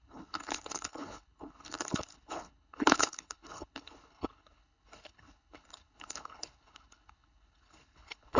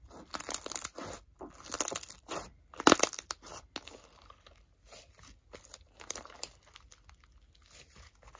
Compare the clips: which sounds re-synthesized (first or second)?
first